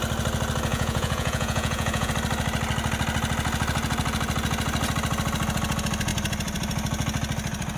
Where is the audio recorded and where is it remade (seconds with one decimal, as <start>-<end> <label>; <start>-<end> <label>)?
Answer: 0.0-0.7 recorded; 0.7-2.1 remade; 2.1-7.8 recorded